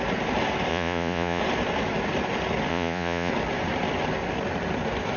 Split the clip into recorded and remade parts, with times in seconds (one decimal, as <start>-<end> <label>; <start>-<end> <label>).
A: 0.0-0.7 recorded; 0.7-1.4 remade; 1.4-2.7 recorded; 2.7-3.3 remade; 3.3-5.2 recorded